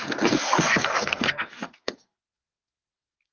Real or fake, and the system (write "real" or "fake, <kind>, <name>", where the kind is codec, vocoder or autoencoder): fake, codec, SNAC